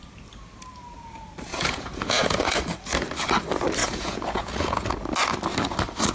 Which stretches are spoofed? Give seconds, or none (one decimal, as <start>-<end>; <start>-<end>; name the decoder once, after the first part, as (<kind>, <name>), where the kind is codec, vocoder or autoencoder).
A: 1.5-2.6 (vocoder, Vocos); 3.8-4.9